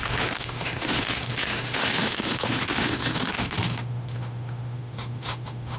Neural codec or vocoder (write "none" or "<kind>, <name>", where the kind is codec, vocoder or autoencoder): autoencoder, DAC-VAE